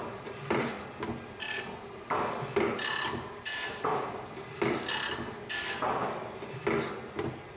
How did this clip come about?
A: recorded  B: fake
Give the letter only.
A